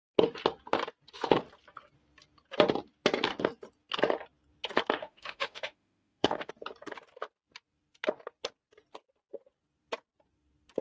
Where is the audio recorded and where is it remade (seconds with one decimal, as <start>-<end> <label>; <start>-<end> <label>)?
0.0-5.0 recorded; 5.0-6.5 remade; 6.5-10.8 recorded